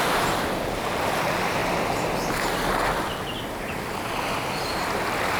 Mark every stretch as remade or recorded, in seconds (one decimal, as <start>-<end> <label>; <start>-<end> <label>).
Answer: 0.0-5.4 recorded